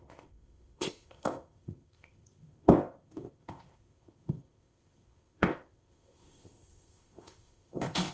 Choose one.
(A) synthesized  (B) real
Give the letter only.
A